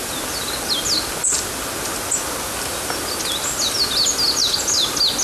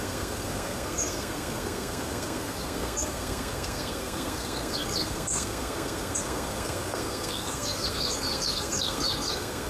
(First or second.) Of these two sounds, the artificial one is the second